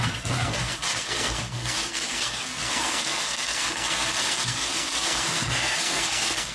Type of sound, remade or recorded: remade